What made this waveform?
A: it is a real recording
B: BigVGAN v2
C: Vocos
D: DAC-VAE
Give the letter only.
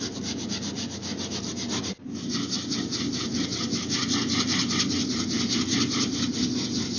A